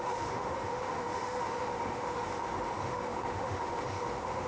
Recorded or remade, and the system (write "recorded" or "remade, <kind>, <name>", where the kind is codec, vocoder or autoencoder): remade, autoencoder, DAC-VAE